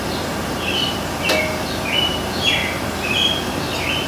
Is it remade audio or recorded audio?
recorded